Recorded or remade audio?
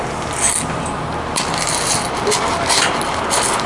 recorded